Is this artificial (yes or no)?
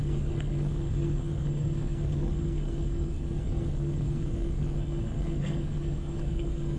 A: yes